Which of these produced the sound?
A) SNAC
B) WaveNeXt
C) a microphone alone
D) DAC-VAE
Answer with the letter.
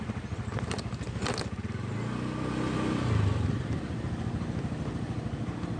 C